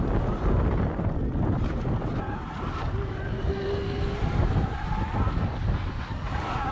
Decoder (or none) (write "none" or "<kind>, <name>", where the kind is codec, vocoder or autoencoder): none